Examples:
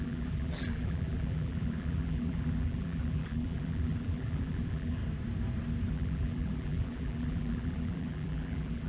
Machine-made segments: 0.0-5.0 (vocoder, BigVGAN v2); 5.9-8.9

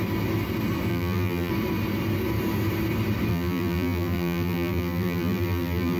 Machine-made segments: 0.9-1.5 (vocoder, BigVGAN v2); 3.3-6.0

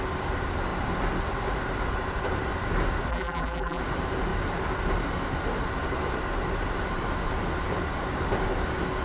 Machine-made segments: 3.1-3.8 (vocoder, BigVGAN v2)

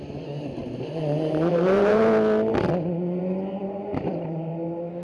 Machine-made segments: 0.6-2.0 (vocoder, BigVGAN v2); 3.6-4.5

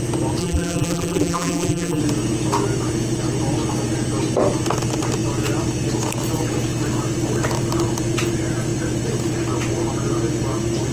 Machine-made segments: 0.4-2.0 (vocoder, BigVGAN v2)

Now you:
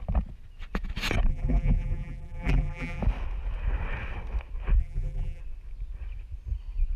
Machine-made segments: 1.3-3.0 (vocoder, BigVGAN v2); 4.8-5.4